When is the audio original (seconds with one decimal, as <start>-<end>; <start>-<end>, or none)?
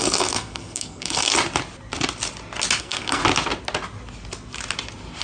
1.3-2.8; 3.2-5.2